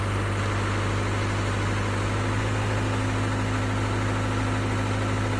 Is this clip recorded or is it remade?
recorded